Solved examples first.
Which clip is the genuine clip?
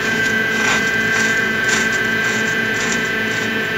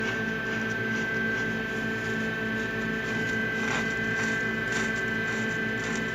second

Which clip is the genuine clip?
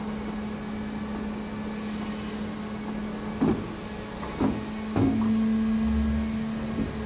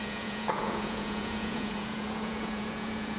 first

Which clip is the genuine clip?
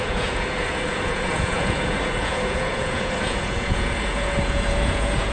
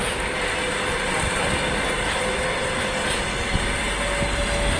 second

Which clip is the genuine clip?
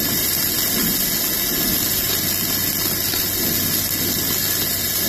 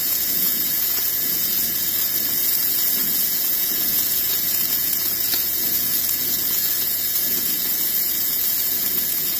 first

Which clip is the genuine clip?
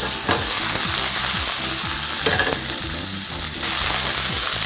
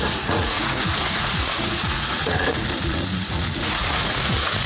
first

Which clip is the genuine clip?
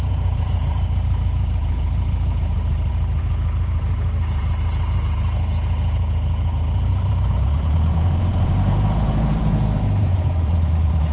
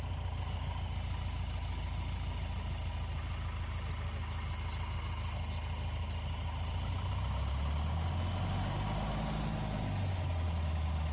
second